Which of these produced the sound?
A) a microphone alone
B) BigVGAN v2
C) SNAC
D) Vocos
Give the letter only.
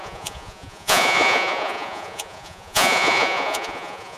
D